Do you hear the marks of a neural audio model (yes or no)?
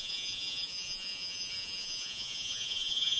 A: yes